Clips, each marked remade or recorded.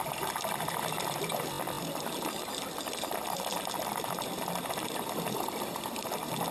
recorded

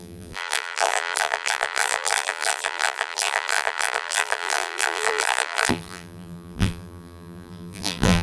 remade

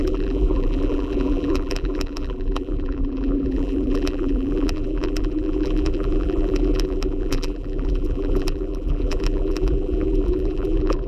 remade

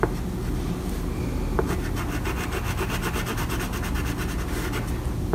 recorded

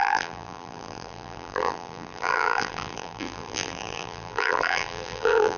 remade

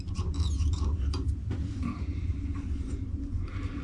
remade